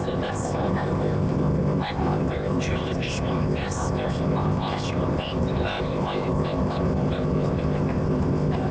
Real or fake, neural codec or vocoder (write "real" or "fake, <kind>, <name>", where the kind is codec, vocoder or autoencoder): fake, codec, ZipCodec